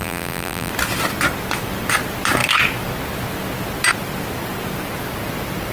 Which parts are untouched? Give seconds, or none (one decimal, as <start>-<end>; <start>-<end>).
0.7-5.7